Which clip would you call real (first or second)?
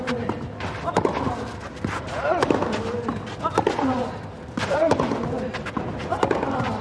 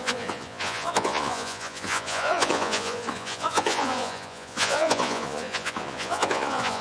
first